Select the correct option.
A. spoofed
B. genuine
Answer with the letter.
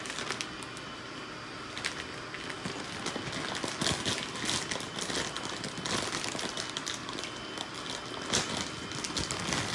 B